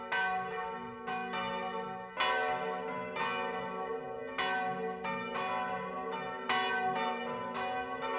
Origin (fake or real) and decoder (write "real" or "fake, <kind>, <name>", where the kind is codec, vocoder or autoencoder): real